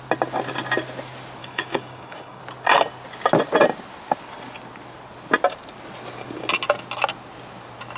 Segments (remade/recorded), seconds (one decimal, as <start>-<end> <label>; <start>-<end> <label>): 0.0-1.4 recorded; 1.4-2.4 remade; 2.4-8.0 recorded